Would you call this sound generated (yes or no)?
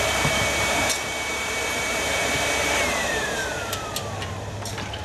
yes